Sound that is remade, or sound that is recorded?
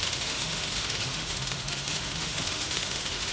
remade